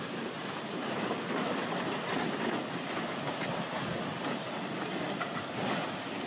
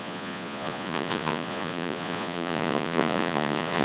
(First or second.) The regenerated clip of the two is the second